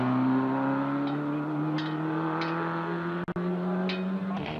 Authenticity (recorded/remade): recorded